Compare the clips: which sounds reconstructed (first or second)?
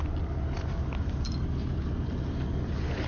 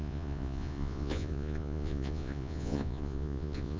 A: second